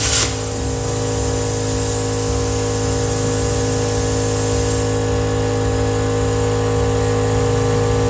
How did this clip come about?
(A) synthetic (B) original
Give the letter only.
B